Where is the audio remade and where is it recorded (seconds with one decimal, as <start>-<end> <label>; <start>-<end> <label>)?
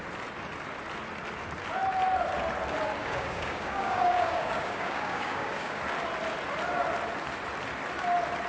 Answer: 0.0-3.0 recorded; 3.0-5.8 remade; 5.8-8.5 recorded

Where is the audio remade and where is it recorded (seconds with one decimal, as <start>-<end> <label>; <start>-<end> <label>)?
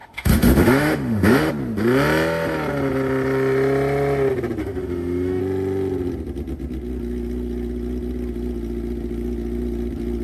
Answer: 0.0-1.5 remade; 1.5-4.6 recorded; 4.6-5.4 remade; 5.4-10.2 recorded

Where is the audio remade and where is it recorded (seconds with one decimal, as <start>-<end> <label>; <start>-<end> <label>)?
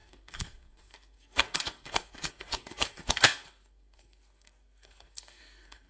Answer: 0.0-5.9 remade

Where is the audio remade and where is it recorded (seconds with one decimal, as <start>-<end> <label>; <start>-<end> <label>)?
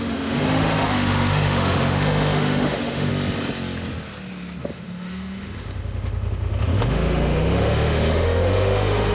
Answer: 0.0-3.1 remade; 3.1-4.6 recorded; 4.6-9.1 remade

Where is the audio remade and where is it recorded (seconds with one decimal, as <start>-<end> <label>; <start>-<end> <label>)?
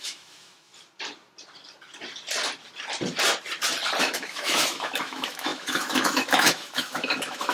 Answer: 0.0-0.7 remade; 0.7-4.0 recorded; 4.0-7.5 remade